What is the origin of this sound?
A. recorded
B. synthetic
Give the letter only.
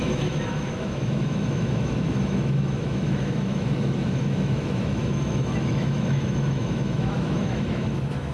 B